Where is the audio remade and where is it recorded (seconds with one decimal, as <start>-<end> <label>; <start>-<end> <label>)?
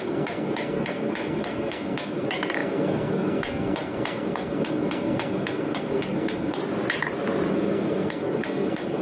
0.0-6.6 remade; 6.6-7.5 recorded; 7.5-9.0 remade